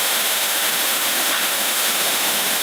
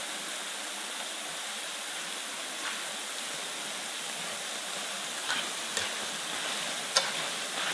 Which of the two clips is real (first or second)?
second